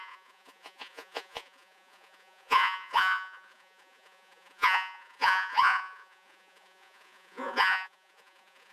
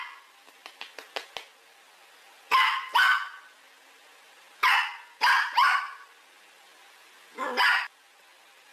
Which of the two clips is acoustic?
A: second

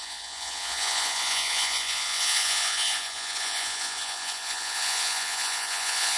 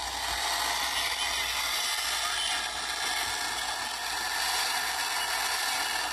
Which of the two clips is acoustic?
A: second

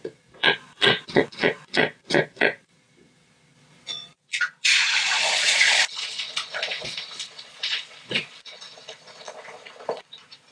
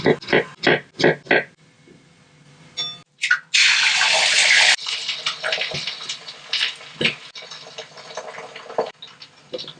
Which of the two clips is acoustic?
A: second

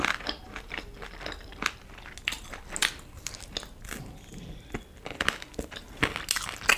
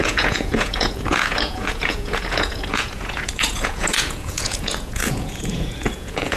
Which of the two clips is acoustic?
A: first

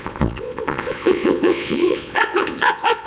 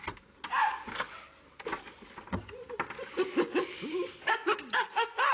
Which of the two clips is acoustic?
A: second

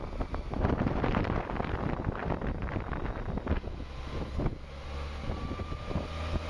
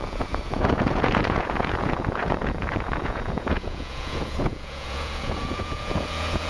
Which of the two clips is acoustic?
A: first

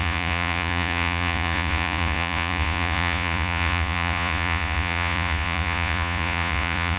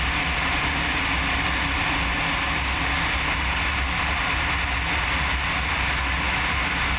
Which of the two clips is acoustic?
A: second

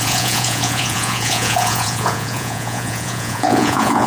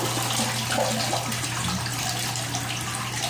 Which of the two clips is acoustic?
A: second